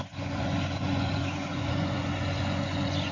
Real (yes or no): no